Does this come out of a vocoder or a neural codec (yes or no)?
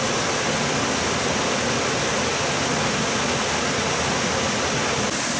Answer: no